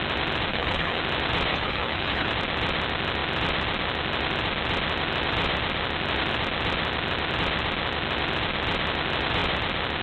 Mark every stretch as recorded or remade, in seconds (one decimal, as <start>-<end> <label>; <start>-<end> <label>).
0.0-0.5 recorded; 0.5-1.0 remade; 1.0-1.5 recorded; 1.5-2.3 remade; 2.3-10.0 recorded